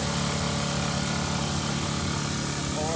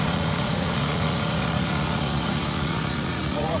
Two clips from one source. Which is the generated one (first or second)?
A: second